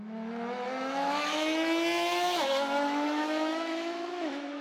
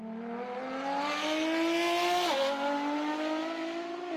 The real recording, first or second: second